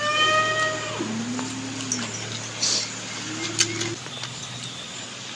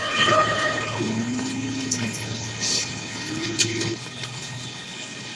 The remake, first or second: second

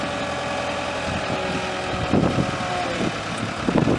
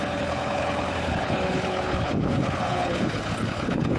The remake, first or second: second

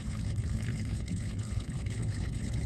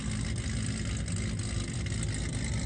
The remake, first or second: first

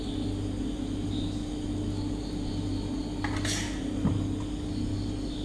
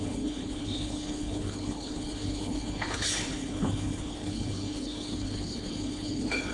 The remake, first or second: second